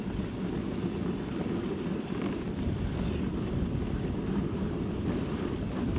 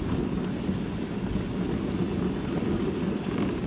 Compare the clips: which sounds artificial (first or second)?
first